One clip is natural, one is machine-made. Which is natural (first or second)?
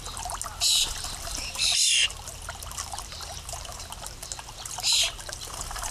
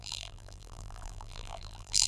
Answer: first